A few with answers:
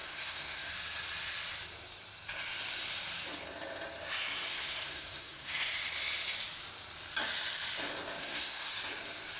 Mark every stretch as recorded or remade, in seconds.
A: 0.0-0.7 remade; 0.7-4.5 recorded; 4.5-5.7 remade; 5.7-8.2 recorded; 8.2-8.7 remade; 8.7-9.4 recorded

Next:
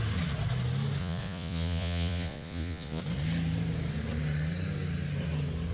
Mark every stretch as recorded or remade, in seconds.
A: 0.0-1.0 recorded; 1.0-3.0 remade; 3.0-5.7 recorded

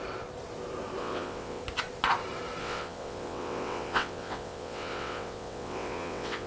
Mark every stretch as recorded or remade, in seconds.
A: 0.0-1.0 recorded; 1.0-1.6 remade; 1.6-2.6 recorded; 2.6-6.5 remade